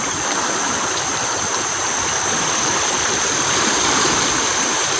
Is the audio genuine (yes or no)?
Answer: yes